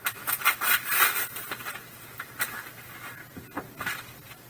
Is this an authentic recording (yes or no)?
yes